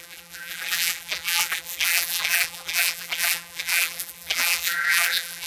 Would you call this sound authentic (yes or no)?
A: no